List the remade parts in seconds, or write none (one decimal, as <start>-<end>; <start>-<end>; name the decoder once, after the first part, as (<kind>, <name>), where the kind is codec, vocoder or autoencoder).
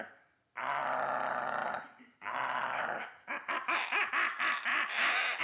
1.6-4.1 (vocoder, BigVGAN v2); 4.7-5.4